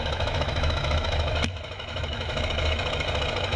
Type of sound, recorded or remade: remade